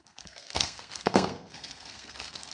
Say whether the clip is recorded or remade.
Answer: remade